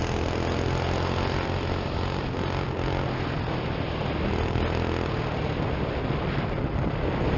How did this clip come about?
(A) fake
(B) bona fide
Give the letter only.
B